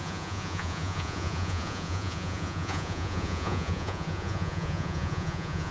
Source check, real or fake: fake